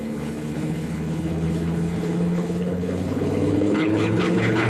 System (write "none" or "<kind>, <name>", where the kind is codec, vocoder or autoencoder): codec, HILCodec